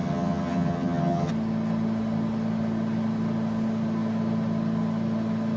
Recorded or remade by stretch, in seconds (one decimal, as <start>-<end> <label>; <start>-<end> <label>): 0.0-1.3 remade; 1.3-5.6 recorded